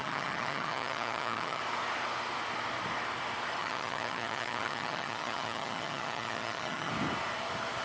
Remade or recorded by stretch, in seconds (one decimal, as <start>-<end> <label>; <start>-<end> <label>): 0.0-1.6 remade; 1.6-3.6 recorded; 3.6-6.9 remade; 6.9-7.8 recorded